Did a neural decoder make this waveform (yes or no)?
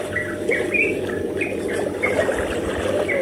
no